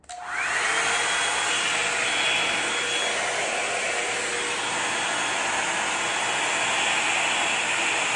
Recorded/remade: recorded